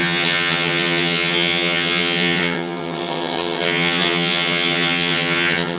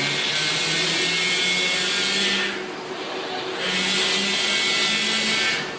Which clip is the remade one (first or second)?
first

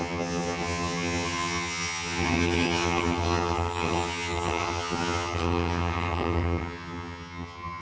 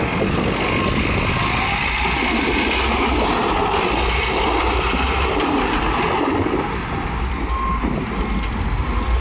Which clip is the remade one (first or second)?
first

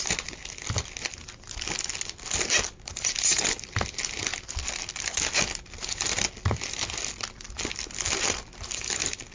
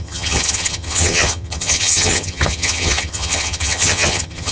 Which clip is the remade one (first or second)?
second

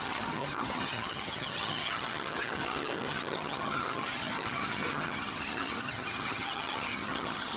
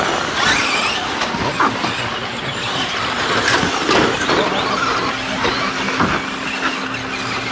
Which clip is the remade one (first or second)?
first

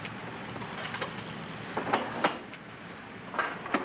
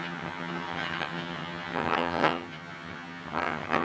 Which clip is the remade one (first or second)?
second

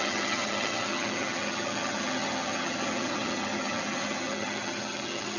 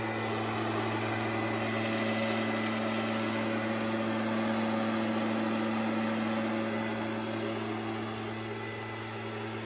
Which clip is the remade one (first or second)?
first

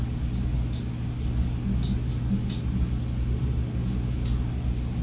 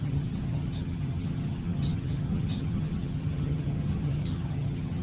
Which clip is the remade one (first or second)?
second